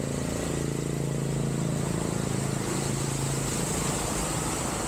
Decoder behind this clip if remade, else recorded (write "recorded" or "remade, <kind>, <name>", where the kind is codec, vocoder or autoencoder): recorded